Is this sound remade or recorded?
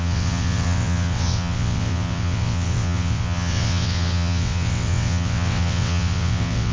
remade